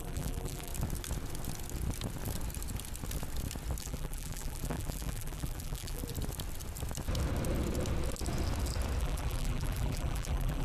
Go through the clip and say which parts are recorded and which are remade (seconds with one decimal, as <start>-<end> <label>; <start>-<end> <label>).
0.0-0.7 remade; 0.7-3.8 recorded; 3.8-6.0 remade; 6.0-9.0 recorded; 9.0-10.6 remade